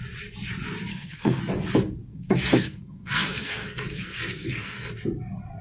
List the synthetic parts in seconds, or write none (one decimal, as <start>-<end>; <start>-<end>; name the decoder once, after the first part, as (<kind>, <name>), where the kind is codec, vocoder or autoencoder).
0.9-1.4 (codec, SNAC); 2.1-4.9